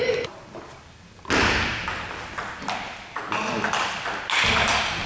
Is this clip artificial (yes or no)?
no